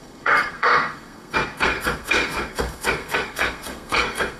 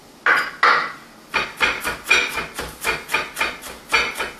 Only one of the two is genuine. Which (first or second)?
second